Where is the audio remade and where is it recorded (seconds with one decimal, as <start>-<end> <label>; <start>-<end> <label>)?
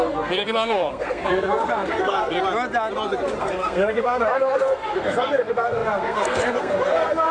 0.0-2.3 remade; 2.3-3.4 recorded; 3.4-7.3 remade